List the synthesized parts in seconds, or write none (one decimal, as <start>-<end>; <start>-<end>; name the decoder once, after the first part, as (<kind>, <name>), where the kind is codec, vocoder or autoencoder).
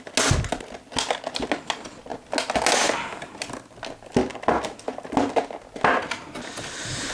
none